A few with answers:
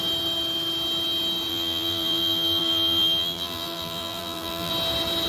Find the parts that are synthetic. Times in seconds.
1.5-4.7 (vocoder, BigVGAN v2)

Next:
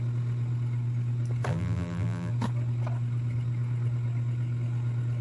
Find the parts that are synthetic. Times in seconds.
1.5-2.3 (vocoder, BigVGAN v2)

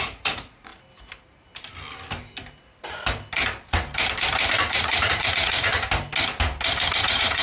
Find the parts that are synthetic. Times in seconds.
0.0-0.7 (vocoder, Vocos); 4.7-5.7; 7.0-7.4

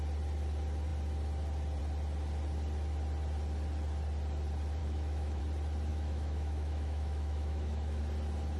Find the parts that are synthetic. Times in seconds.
4.8-5.4 (autoencoder, DAC-VAE); 5.9-8.0

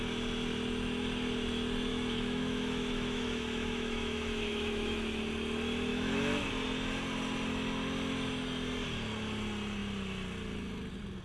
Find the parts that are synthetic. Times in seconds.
1.9-5.2 (autoencoder, DAC-VAE); 5.9-6.5

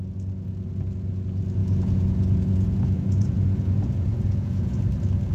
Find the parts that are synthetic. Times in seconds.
1.6-4.8 (vocoder, Vocos)

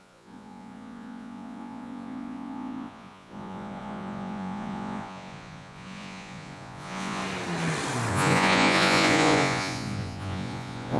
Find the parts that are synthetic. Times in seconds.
0.0-7.2 (vocoder, Vocos); 8.1-11.0

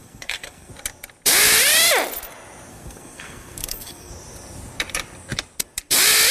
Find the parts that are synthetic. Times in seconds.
0.0-0.7 (codec, SNAC); 2.7-4.1